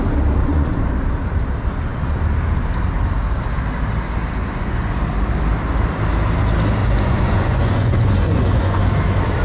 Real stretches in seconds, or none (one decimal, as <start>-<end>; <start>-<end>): 0.0-0.4; 0.9-4.4; 5.0-6.8; 8.8-9.4